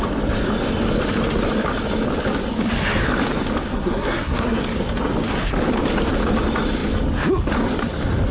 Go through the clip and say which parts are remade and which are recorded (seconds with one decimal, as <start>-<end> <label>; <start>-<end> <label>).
0.0-3.7 recorded; 3.7-4.6 remade; 4.6-8.3 recorded